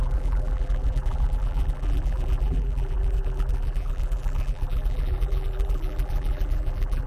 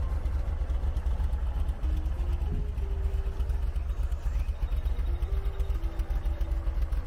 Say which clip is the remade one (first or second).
first